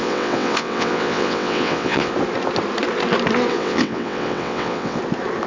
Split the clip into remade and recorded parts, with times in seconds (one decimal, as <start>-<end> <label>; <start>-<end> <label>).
0.0-2.1 remade; 2.1-3.5 recorded; 3.5-5.0 remade; 5.0-5.5 recorded